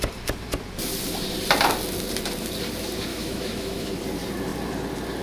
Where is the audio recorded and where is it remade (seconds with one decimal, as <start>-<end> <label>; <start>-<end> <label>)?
0.0-3.1 recorded; 3.1-3.9 remade; 3.9-5.2 recorded